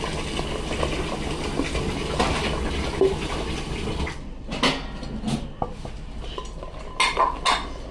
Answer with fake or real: real